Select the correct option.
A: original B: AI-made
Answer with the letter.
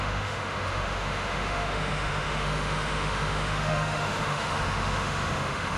B